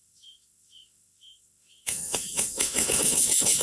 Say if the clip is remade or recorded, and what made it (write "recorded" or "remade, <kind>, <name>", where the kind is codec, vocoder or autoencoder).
remade, autoencoder, DAC-VAE